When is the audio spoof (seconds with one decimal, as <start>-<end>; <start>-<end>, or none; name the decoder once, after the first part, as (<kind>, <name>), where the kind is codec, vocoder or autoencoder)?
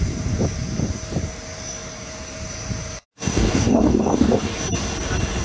3.3-4.4 (codec, DAC)